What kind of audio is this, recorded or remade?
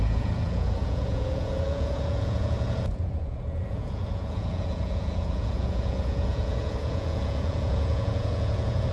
remade